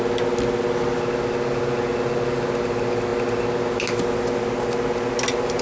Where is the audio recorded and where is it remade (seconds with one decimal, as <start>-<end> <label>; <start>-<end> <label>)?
0.0-5.6 recorded